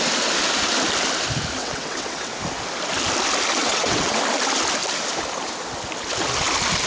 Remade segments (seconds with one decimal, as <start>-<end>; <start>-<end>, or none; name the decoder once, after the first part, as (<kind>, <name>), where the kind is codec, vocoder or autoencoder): 1.6-2.3 (vocoder, WaveNeXt); 3.6-4.2